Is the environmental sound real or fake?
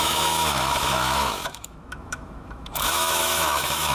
fake